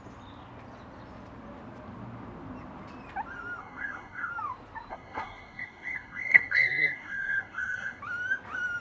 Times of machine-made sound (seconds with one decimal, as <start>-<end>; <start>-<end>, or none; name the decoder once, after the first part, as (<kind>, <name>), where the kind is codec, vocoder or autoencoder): 3.6-4.3 (codec, SNAC); 4.9-8.0